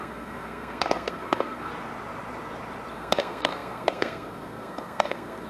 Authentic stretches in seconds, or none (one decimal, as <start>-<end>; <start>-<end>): 1.7-2.9